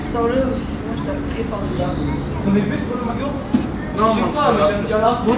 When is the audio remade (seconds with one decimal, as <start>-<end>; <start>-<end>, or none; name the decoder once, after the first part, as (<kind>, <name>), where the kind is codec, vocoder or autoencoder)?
none